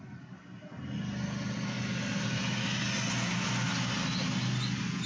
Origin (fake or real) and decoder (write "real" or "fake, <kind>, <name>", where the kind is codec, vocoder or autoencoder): real